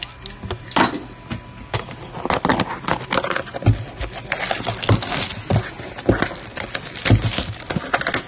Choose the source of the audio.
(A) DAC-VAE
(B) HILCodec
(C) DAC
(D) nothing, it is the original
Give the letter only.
D